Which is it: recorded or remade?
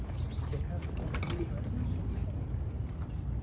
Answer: recorded